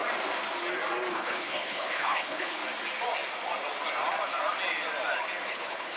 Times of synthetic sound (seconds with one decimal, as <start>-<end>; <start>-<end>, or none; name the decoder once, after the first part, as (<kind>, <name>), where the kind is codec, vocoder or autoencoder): 1.1-2.6 (codec, HILCodec); 5.5-6.0